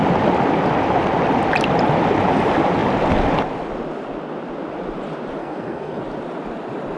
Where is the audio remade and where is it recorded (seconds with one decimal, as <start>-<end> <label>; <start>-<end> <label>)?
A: 0.0-5.4 recorded; 5.4-6.0 remade; 6.0-7.0 recorded